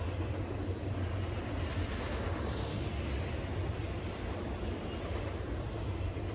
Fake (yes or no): no